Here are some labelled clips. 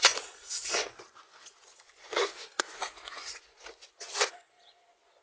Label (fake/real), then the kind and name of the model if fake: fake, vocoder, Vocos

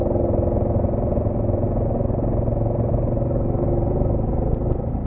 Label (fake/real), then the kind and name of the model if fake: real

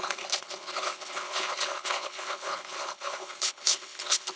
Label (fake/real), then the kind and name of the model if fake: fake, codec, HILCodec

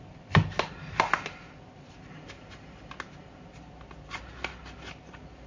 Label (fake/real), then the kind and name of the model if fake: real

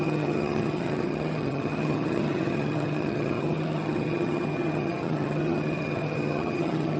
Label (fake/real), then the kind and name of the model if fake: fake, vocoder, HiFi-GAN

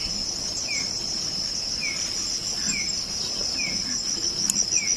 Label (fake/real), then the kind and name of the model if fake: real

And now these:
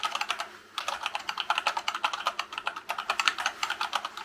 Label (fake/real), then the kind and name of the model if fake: real